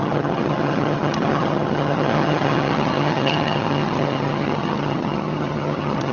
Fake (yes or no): yes